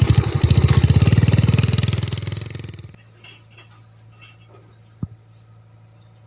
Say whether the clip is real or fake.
real